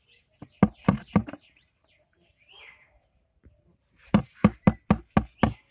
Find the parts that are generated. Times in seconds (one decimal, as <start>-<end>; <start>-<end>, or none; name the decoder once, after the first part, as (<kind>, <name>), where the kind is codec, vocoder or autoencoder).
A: 1.2-4.6 (vocoder, BigVGAN v2)